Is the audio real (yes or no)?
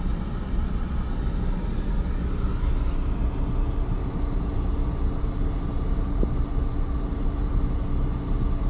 yes